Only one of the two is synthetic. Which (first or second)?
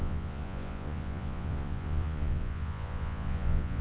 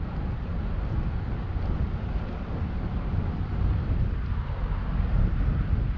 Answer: first